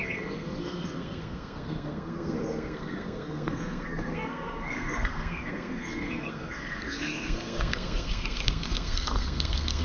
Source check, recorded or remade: remade